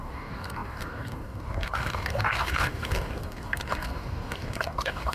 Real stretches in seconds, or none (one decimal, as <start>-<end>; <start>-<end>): none